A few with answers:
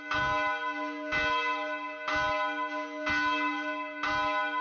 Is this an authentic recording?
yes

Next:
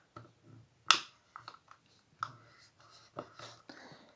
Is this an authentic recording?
yes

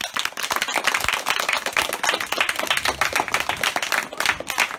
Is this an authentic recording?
yes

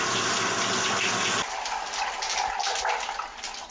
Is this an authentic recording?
yes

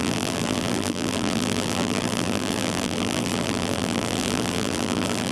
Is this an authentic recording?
no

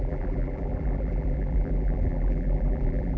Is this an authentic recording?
no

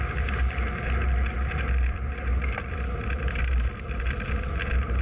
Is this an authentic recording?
no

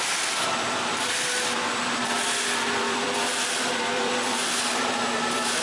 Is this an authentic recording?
no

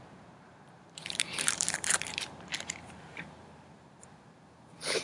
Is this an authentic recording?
no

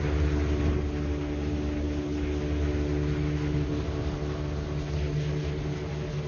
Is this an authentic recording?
yes